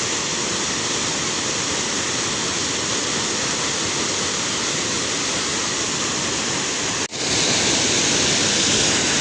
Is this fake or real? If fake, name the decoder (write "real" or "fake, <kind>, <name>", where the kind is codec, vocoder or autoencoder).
real